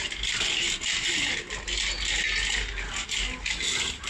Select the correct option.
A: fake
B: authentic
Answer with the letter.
B